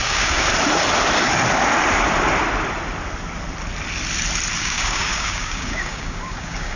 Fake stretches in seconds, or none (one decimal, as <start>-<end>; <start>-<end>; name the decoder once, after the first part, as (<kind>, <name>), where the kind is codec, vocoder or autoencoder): 0.0-0.5 (codec, DAC); 4.6-6.8